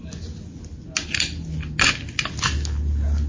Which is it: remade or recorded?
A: recorded